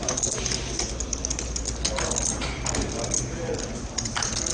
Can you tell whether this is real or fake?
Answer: real